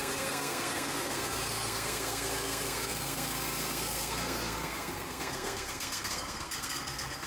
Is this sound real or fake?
fake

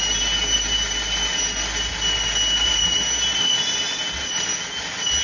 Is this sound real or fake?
real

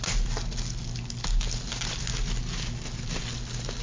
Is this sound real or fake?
real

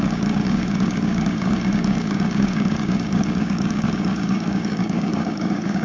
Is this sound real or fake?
fake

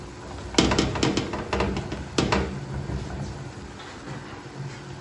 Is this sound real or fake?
real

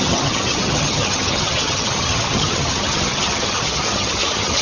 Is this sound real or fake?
fake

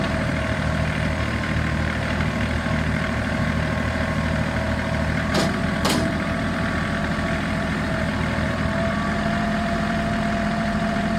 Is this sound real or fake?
fake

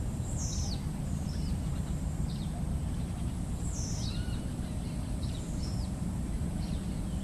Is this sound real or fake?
fake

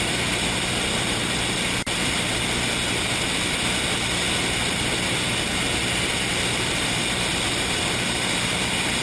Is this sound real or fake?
real